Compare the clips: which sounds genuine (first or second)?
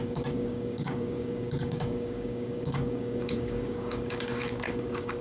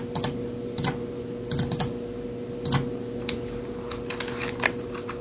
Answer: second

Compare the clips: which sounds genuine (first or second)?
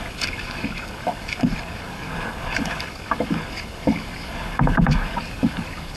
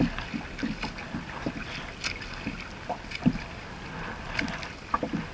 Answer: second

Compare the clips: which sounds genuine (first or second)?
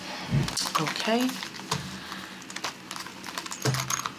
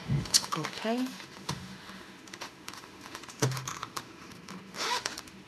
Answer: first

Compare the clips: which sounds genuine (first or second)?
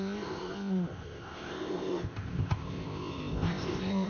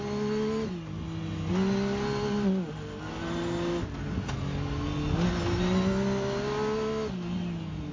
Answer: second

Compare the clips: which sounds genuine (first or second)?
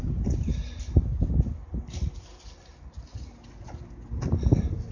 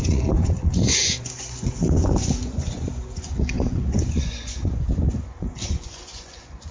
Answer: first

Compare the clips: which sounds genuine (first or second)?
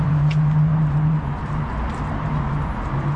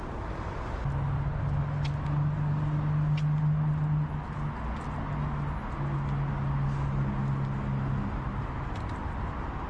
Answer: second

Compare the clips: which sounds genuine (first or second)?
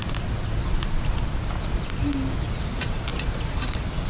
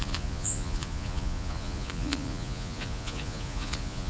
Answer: first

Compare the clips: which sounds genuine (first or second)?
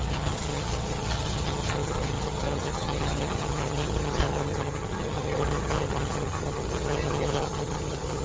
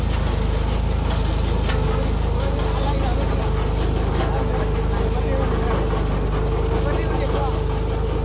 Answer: second